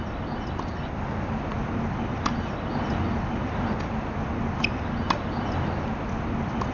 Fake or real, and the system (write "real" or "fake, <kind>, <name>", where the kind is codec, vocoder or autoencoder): real